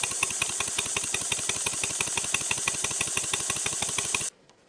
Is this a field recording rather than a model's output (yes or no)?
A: yes